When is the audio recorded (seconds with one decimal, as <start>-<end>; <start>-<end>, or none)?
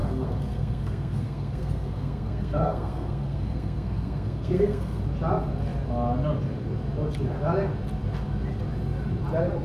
5.0-9.6